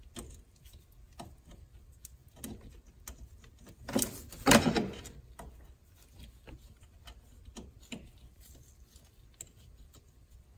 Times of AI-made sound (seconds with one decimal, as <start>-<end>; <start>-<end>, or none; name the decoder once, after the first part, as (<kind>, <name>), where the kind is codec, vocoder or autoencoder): none